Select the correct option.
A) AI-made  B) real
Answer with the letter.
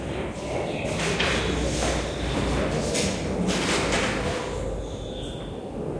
B